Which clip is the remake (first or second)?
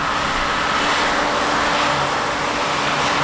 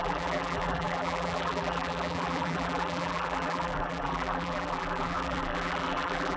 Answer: second